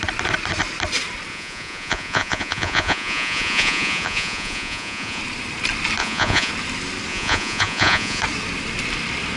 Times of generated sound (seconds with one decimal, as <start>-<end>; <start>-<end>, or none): 1.3-5.2; 6.0-6.5; 7.1-8.2